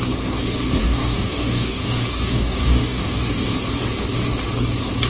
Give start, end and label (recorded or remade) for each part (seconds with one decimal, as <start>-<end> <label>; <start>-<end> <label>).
0.0-0.8 recorded; 0.8-3.5 remade; 3.5-5.1 recorded